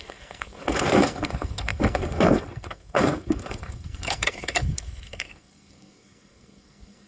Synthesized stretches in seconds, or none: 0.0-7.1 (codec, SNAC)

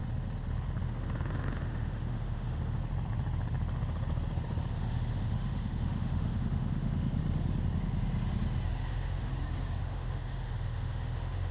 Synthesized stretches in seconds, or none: 0.8-2.8 (autoencoder, DAC-VAE); 4.7-7.2; 8.8-9.3; 9.8-11.5